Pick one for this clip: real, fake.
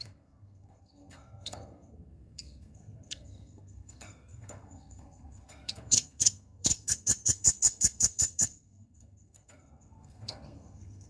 fake